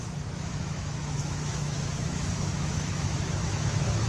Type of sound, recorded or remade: remade